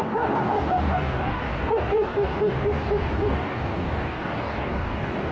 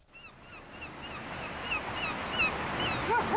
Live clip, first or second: second